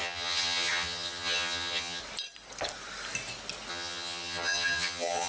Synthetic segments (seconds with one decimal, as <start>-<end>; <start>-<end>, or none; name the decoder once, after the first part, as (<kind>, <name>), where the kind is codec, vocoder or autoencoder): 0.0-2.0 (vocoder, HiFi-GAN); 3.7-5.3